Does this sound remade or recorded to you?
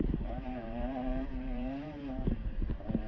remade